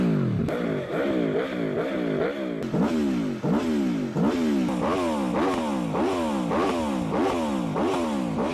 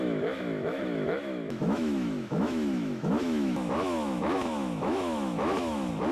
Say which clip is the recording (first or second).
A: first